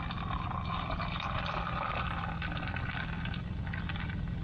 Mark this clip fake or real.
real